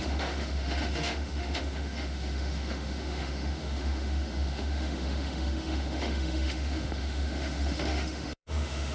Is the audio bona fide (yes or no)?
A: no